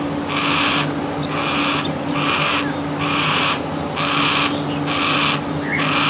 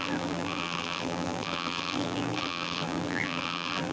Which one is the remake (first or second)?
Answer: second